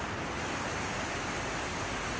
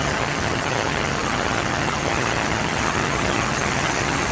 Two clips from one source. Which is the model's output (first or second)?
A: second